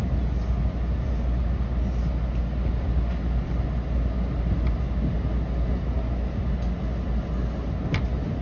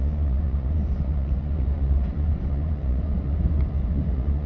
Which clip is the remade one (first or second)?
second